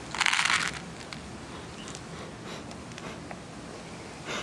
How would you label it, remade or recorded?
recorded